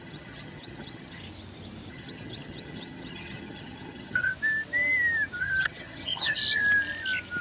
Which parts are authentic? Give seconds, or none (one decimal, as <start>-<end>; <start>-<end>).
1.2-1.9; 4.3-5.4; 6.4-7.4